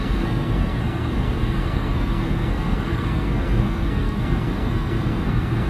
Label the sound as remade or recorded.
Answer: remade